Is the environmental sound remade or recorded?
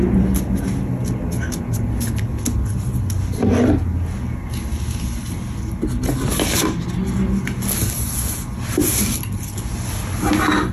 recorded